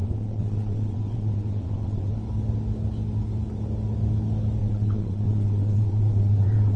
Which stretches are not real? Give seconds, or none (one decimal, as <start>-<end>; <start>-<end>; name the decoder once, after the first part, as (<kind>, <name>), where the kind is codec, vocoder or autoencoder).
0.0-2.1 (vocoder, WaveNeXt); 4.6-6.8